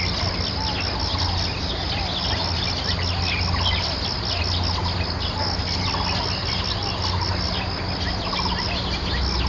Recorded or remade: recorded